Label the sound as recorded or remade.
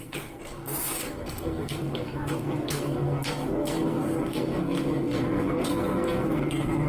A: remade